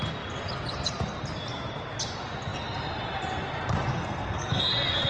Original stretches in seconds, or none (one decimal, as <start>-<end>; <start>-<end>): 0.0-3.9; 4.6-5.1